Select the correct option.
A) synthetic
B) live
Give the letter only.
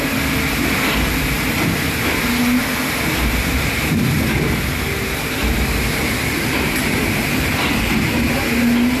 B